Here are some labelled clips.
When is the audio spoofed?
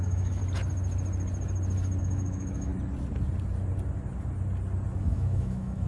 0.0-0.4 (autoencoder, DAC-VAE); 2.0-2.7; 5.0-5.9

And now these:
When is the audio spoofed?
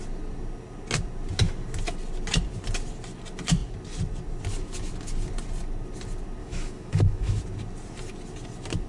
6.4-7.4 (autoencoder, DAC-VAE)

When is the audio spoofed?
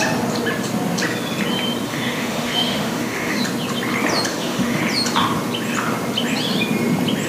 1.9-3.4 (autoencoder, DAC-VAE); 4.3-4.8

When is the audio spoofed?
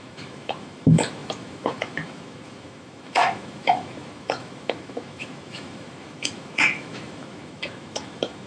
0.0-8.5 (autoencoder, DAC-VAE)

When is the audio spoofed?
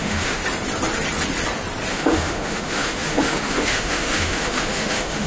0.0-0.4 (autoencoder, DAC-VAE); 1.9-5.3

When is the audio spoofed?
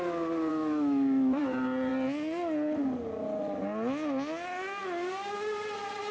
0.5-1.4 (autoencoder, DAC-VAE)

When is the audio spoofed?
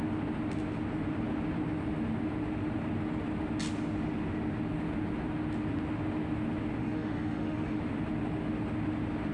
6.8-7.8 (autoencoder, DAC-VAE)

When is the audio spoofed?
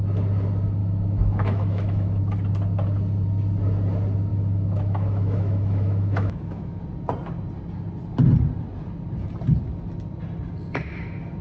0.8-2.2 (autoencoder, DAC-VAE); 4.3-6.8